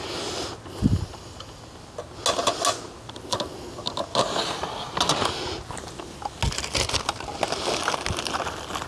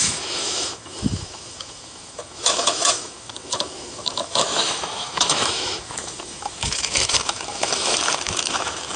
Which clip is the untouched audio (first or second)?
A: first